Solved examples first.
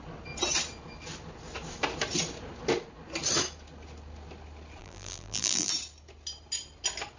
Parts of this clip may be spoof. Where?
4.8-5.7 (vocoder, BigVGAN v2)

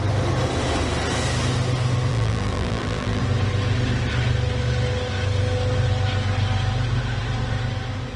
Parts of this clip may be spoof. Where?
2.1-3.2 (vocoder, BigVGAN v2)

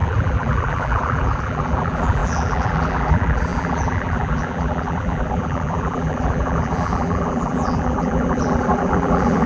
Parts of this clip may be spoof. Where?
0.0-9.5 (vocoder, BigVGAN v2)

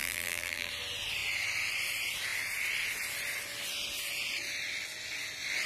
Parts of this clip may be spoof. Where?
0.0-0.7 (vocoder, BigVGAN v2)

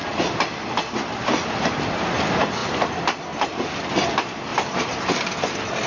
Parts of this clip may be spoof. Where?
4.5-5.1 (vocoder, BigVGAN v2)

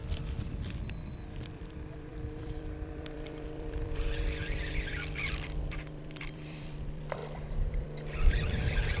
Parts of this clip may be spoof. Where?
0.7-9.0 (vocoder, BigVGAN v2)